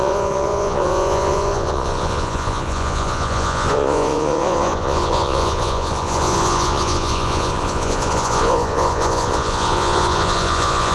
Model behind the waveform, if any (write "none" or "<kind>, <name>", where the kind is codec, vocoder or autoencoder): vocoder, Vocos